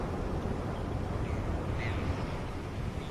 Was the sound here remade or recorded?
recorded